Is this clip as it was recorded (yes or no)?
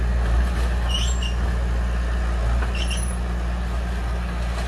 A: yes